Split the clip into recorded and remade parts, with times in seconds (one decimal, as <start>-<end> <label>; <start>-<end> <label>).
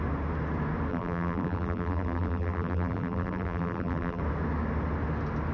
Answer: 0.0-0.9 recorded; 0.9-4.2 remade; 4.2-5.5 recorded